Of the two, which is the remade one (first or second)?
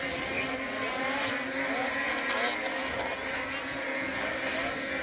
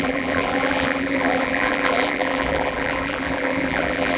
second